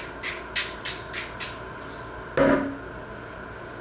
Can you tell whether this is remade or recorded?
recorded